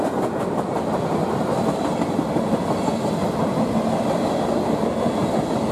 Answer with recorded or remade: recorded